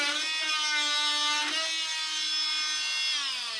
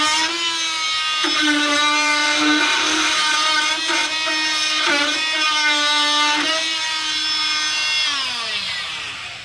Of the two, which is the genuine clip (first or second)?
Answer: first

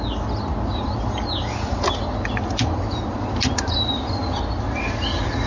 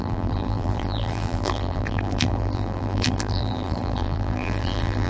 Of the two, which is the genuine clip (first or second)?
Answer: first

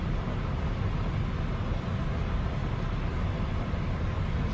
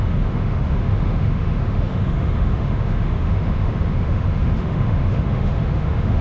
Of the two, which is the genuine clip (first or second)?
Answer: first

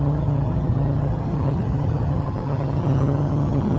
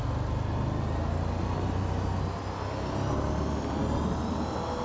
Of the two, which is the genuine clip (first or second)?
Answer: second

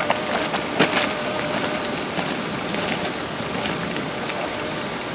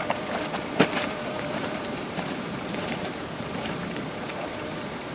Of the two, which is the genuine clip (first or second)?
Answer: first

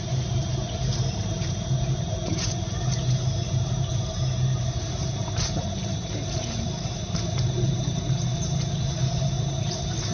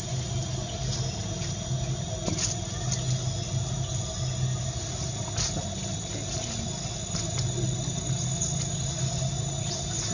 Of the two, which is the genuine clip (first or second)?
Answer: second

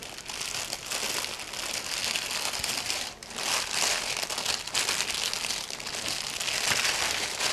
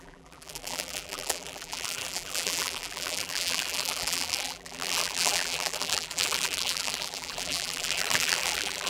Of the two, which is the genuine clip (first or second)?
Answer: first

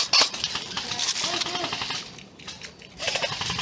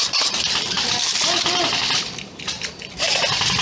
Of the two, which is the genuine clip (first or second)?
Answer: first